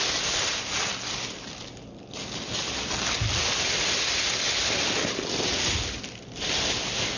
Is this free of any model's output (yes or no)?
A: yes